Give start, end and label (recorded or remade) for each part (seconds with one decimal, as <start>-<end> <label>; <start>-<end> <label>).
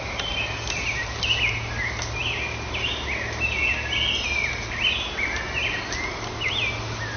0.0-7.2 recorded